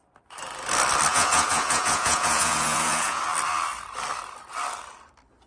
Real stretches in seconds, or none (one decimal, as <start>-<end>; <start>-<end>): 0.0-1.1; 3.2-5.5